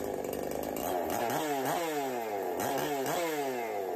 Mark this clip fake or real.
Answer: real